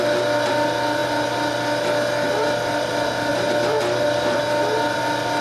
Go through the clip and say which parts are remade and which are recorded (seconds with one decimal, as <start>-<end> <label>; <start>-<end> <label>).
0.0-3.3 recorded; 3.3-4.4 remade; 4.4-5.4 recorded